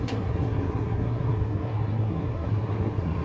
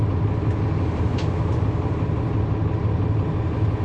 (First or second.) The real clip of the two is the second